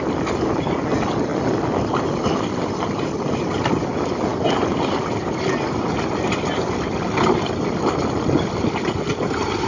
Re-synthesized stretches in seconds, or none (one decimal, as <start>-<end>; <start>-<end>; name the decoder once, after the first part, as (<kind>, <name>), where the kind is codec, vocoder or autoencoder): none